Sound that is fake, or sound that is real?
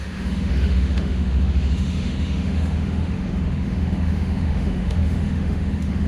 fake